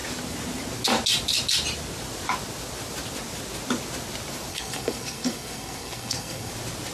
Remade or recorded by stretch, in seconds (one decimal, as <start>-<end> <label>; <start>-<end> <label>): 0.0-4.5 recorded; 4.5-6.5 remade; 6.5-6.9 recorded